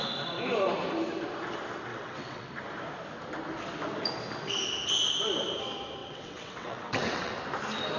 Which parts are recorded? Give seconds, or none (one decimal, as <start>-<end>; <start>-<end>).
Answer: 0.0-1.9; 2.5-6.0; 7.3-8.0